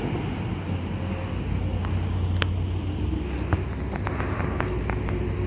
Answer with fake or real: real